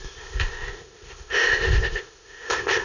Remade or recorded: remade